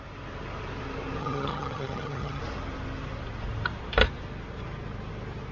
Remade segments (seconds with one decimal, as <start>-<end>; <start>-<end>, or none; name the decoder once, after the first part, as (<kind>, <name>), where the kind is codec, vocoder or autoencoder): 1.2-2.4 (vocoder, HiFi-GAN)

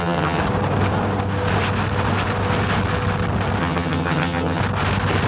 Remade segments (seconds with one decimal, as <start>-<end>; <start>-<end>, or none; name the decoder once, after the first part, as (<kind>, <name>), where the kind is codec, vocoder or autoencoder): 0.0-0.4 (vocoder, HiFi-GAN); 3.6-4.6

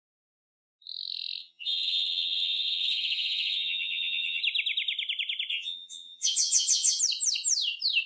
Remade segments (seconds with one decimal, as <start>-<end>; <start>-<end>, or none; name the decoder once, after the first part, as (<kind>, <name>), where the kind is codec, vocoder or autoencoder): 1.4-4.4 (vocoder, HiFi-GAN); 5.5-7.0

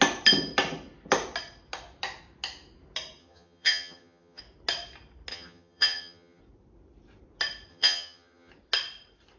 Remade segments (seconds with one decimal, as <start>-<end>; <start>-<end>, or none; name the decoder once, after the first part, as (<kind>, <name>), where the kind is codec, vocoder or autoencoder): 3.2-4.4 (vocoder, HiFi-GAN); 5.3-6.4; 7.7-8.5